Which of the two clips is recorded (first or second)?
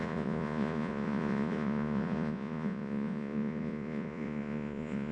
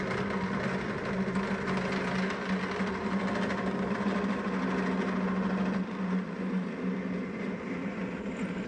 second